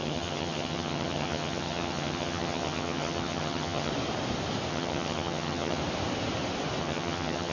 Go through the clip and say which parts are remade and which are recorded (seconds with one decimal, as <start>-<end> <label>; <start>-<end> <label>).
0.0-3.9 remade; 3.9-4.7 recorded; 4.7-5.8 remade; 5.8-6.8 recorded; 6.8-7.5 remade